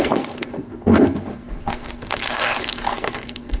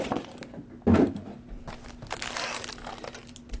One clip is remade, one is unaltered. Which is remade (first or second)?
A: first